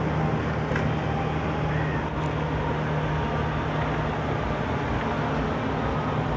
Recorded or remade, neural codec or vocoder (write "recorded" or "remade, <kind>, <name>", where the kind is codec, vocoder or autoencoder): recorded